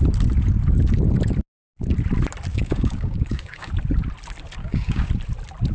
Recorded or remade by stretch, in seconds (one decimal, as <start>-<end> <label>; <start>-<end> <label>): 0.0-2.5 recorded; 2.5-3.7 remade; 3.7-4.6 recorded; 4.6-5.1 remade; 5.1-5.7 recorded